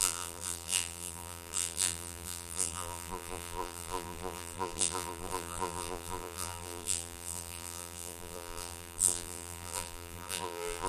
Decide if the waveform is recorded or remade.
remade